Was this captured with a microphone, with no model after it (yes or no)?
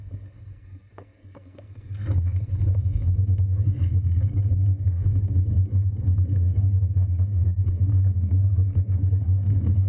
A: no